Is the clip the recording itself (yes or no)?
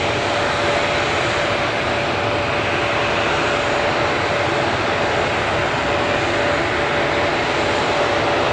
yes